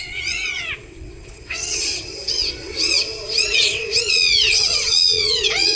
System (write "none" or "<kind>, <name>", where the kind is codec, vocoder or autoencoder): vocoder, WaveNeXt